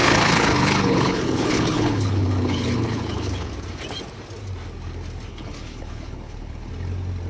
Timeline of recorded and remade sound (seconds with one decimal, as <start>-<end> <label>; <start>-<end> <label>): 0.0-3.5 remade; 3.5-5.3 recorded; 5.3-6.7 remade; 6.7-7.3 recorded